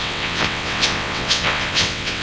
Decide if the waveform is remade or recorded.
remade